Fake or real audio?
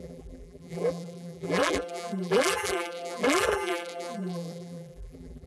fake